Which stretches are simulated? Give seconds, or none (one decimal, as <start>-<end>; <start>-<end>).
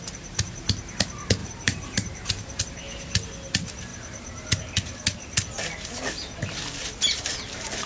1.4-2.6